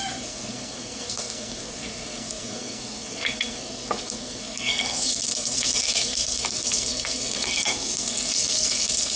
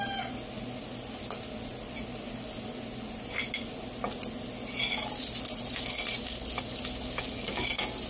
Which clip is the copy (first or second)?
first